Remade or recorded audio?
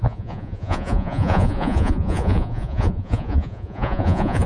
remade